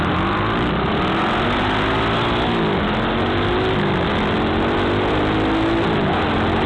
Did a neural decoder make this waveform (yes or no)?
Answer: no